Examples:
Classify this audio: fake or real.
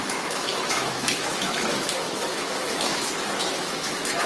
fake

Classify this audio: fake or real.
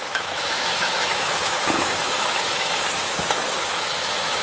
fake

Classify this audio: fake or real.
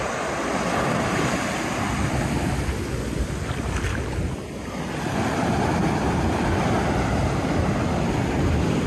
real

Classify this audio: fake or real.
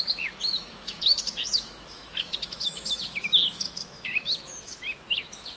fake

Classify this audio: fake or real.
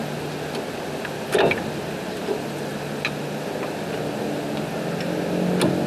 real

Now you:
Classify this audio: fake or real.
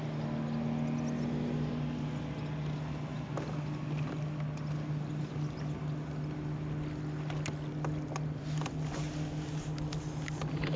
real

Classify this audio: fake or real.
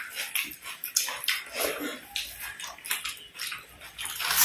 real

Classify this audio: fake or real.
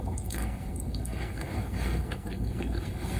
fake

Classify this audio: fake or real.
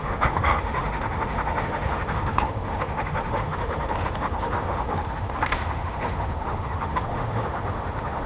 fake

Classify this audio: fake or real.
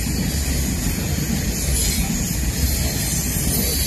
real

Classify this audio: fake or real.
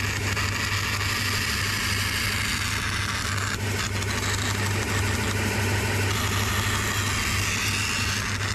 real